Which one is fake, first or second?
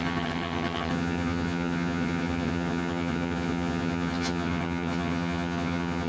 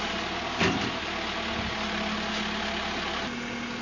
first